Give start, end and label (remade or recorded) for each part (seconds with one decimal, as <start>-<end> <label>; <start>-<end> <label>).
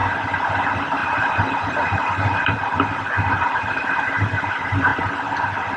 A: 0.0-1.0 recorded; 1.0-4.5 remade; 4.5-5.8 recorded